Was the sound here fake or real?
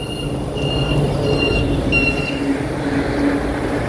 real